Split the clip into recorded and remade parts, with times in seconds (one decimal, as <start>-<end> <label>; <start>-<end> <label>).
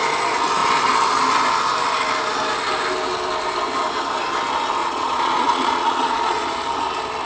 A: 0.0-4.8 recorded; 4.8-6.5 remade; 6.5-7.3 recorded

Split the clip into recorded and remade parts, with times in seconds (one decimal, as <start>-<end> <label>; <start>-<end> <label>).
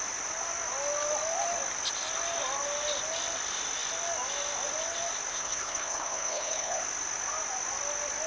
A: 0.0-5.3 recorded; 5.3-6.8 remade; 6.8-8.3 recorded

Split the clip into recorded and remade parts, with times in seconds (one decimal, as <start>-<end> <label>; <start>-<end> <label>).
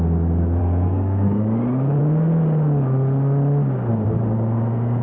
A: 0.0-0.6 recorded; 0.6-1.4 remade; 1.4-5.0 recorded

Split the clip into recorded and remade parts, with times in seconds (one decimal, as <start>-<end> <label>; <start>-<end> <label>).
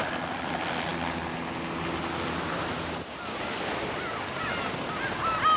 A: 0.0-5.6 recorded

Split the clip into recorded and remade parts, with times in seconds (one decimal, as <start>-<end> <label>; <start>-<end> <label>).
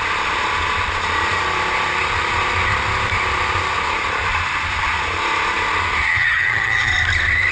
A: 0.0-6.1 recorded; 6.1-6.9 remade; 6.9-7.5 recorded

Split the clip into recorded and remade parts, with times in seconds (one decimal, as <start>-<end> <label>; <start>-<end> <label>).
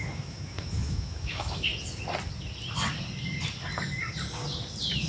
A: 0.0-1.7 remade; 1.7-5.1 recorded